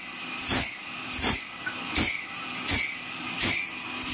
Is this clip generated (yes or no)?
no